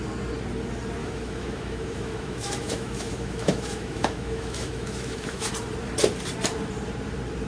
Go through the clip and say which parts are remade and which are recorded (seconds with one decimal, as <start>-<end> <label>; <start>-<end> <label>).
0.0-1.0 recorded; 1.0-5.5 remade; 5.5-7.5 recorded